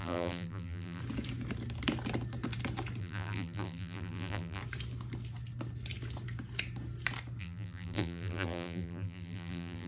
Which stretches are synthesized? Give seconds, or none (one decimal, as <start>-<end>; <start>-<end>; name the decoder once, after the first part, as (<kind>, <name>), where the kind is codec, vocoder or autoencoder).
0.0-1.0 (vocoder, BigVGAN v2); 3.0-4.6; 7.4-9.9